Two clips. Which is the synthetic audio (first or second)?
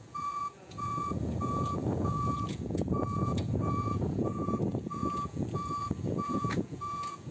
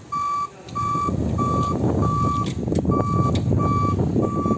first